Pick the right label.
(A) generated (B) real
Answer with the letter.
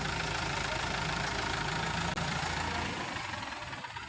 B